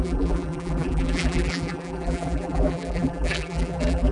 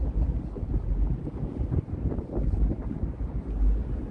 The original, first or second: second